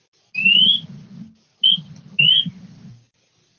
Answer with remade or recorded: recorded